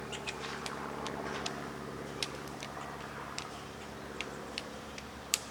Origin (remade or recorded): remade